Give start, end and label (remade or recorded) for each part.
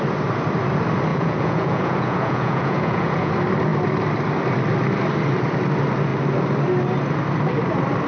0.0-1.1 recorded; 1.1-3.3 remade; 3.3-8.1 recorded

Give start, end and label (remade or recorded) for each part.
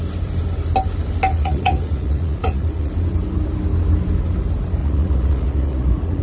0.0-1.3 recorded; 1.3-2.9 remade; 2.9-4.8 recorded; 4.8-6.2 remade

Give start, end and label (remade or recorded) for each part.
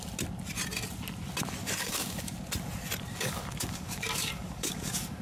0.0-1.6 recorded; 1.6-2.3 remade; 2.3-3.1 recorded; 3.1-5.2 remade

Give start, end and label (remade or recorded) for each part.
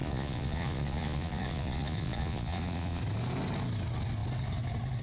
0.0-3.0 remade; 3.0-5.0 recorded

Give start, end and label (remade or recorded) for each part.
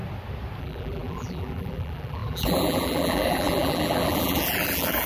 0.0-0.6 recorded; 0.6-5.1 remade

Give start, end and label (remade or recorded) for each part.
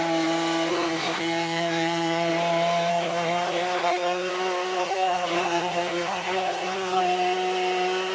0.0-0.7 recorded; 0.7-2.3 remade; 2.3-2.9 recorded; 2.9-4.3 remade; 4.3-4.8 recorded; 4.8-7.0 remade; 7.0-8.1 recorded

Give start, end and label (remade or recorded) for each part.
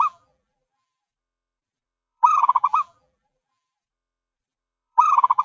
0.0-5.4 remade